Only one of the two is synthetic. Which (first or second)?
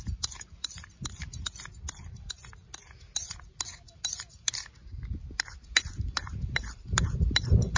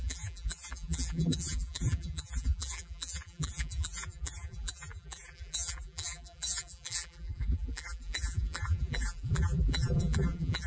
second